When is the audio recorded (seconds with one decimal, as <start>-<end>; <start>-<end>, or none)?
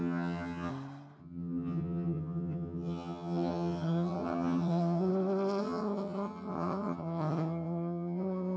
0.7-1.2; 5.1-5.6